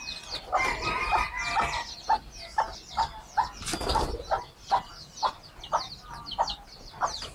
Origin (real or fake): real